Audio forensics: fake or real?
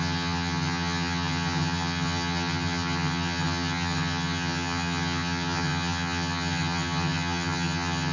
fake